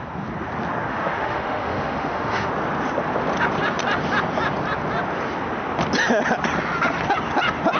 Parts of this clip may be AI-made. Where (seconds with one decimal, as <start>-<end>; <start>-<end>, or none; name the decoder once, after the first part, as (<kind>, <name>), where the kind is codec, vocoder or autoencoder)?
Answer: 0.9-2.5 (autoencoder, DAC-VAE)